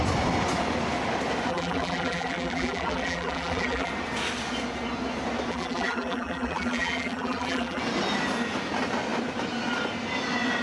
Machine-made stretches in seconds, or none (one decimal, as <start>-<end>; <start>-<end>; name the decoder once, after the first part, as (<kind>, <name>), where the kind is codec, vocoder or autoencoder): 1.5-3.9 (vocoder, BigVGAN v2); 5.5-7.8